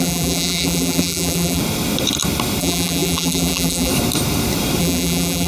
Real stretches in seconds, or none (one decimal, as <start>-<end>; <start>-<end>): 1.6-2.6; 3.9-4.8